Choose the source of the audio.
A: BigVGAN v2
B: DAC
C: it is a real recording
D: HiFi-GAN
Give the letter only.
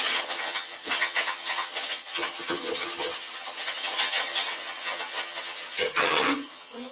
D